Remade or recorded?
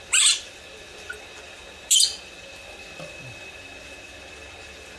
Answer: recorded